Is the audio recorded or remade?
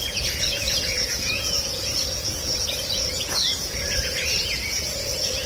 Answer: remade